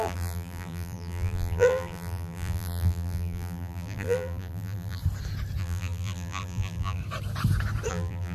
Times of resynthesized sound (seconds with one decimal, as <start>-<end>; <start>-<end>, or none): 0.0-5.0; 5.6-7.0; 7.9-8.3